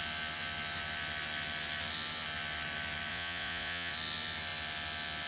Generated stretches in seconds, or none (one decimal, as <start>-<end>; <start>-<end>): 3.1-3.9